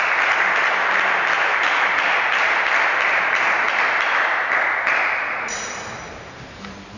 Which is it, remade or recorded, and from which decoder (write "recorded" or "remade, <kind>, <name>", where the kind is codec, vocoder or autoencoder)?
recorded